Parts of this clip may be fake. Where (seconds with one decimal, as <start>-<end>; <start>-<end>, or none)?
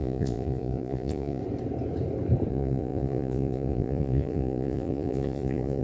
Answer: 0.0-1.4; 2.5-5.8